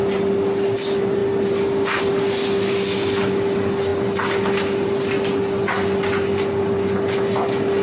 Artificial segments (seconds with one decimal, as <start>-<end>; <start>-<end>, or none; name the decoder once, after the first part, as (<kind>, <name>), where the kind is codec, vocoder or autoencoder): none